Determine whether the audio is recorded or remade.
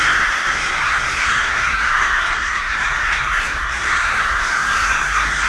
remade